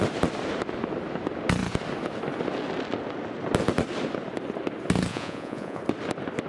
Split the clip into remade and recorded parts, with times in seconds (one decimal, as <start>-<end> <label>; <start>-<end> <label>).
0.0-5.1 recorded; 5.1-5.8 remade; 5.8-6.5 recorded